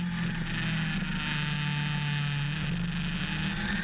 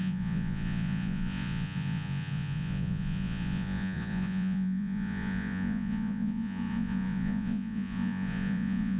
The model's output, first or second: second